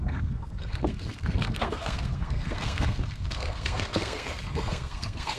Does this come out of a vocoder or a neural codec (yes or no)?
yes